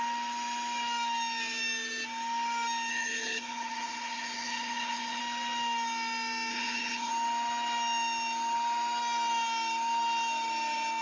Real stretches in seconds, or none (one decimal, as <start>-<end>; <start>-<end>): 0.0-2.9; 5.2-6.5; 7.1-11.0